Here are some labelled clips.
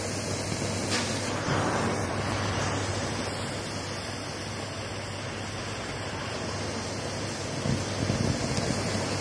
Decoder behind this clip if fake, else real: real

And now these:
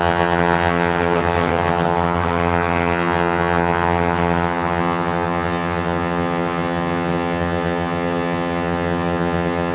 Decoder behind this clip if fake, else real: fake, vocoder, HiFi-GAN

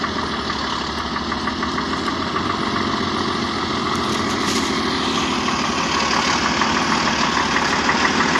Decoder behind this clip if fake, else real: real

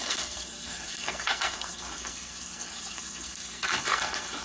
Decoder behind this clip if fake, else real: fake, codec, SNAC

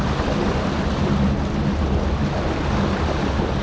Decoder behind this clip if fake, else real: real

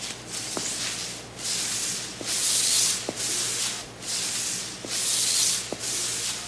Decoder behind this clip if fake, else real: real